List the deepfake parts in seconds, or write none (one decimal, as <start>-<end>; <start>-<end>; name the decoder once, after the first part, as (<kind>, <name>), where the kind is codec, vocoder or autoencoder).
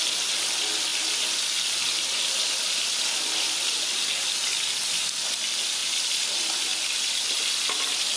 none